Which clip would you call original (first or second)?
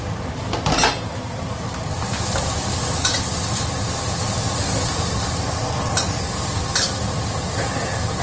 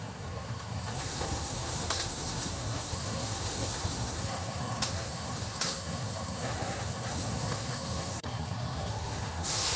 first